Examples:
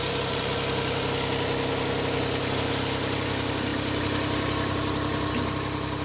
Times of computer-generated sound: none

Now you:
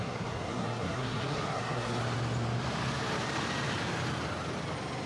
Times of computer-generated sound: 0.0-2.0 (codec, SNAC)

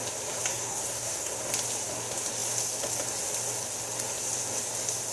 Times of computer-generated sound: 0.5-1.3 (codec, SNAC)

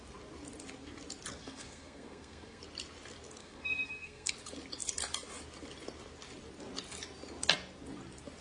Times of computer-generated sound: 1.4-2.6 (codec, SNAC); 3.4-4.3

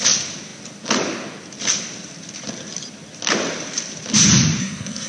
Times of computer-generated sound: 4.6-5.1 (codec, SNAC)

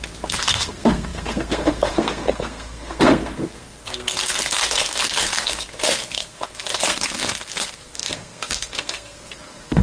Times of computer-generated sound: 0.0-9.8 (codec, SNAC)